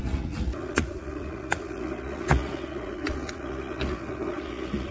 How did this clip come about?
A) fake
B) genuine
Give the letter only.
A